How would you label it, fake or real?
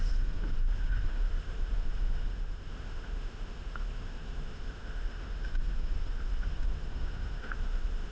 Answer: fake